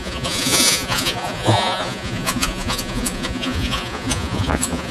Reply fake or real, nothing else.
fake